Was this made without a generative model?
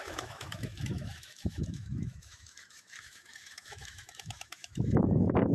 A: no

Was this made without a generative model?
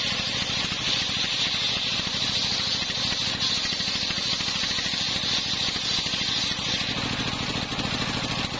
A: yes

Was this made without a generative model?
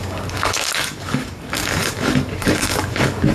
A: no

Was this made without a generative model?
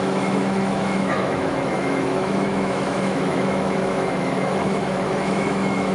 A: no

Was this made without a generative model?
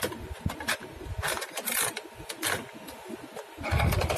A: yes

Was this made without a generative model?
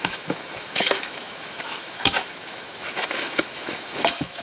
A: no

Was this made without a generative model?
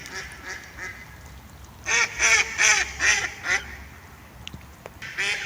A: yes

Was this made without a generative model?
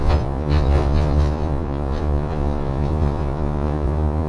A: no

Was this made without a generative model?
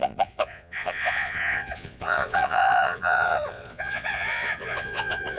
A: no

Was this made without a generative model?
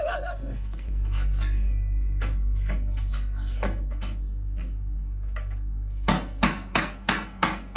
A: no